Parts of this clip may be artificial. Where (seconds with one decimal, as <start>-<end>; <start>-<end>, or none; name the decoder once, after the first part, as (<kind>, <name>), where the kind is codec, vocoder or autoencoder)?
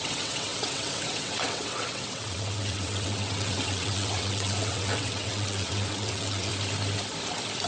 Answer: 0.0-6.5 (vocoder, WaveNeXt)